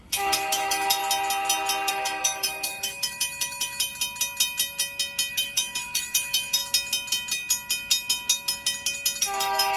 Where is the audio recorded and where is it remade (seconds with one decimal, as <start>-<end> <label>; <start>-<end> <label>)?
0.0-1.0 remade; 1.0-1.9 recorded; 1.9-3.9 remade; 3.9-5.3 recorded; 5.3-6.6 remade; 6.6-9.2 recorded; 9.2-9.8 remade